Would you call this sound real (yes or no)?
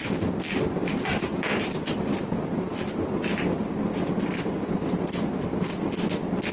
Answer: yes